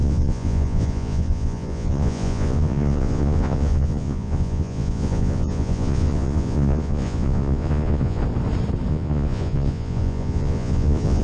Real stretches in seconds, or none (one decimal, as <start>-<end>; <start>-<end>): 8.2-8.9